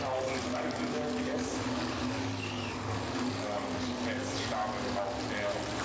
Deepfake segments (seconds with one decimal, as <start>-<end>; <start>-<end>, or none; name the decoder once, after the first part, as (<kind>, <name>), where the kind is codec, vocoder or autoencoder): 0.4-3.9 (codec, DAC)